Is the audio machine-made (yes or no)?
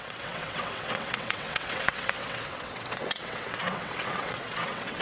yes